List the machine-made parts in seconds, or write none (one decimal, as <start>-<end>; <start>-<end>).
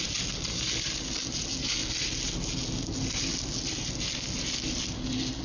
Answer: none